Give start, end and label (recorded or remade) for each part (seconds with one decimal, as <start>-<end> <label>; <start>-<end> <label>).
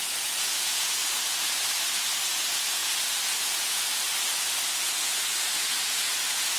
0.0-1.0 remade; 1.0-2.2 recorded; 2.2-2.8 remade; 2.8-3.4 recorded; 3.4-4.1 remade; 4.1-4.8 recorded; 4.8-6.6 remade